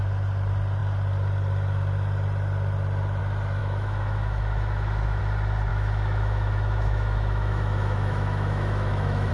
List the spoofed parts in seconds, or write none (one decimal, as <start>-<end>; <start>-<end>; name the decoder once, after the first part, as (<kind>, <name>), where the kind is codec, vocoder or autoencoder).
3.6-5.2 (autoencoder, DAC-VAE); 5.7-9.3